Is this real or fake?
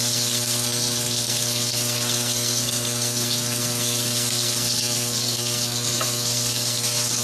fake